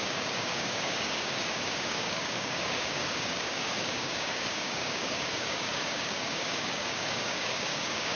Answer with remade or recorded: remade